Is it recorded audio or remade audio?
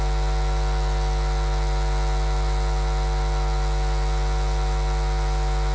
recorded